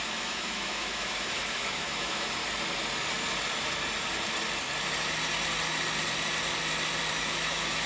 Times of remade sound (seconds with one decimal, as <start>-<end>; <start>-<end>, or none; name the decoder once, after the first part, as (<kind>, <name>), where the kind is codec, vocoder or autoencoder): 0.0-2.4 (autoencoder, DAC-VAE); 7.1-7.9